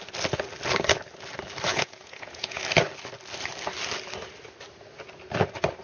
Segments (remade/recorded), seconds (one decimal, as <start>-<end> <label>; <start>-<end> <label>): 0.0-1.7 recorded; 1.7-2.6 remade; 2.6-5.8 recorded